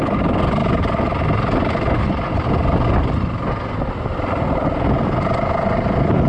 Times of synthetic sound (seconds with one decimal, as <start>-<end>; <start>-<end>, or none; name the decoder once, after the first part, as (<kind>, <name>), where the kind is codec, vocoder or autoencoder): none